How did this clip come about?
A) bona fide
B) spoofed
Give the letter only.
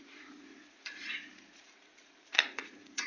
B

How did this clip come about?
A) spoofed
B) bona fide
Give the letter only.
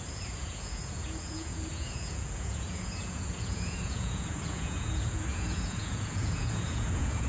A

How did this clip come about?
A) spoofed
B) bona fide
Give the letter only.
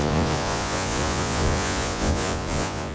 A